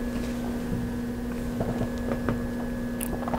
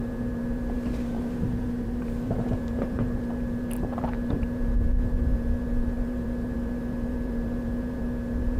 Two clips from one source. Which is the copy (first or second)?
second